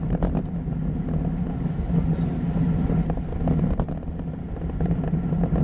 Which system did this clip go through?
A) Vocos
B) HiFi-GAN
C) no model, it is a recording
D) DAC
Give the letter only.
C